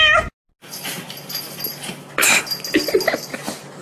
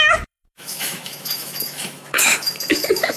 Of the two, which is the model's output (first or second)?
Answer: second